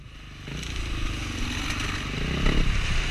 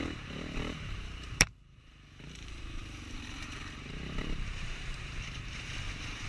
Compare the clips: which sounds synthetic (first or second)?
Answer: second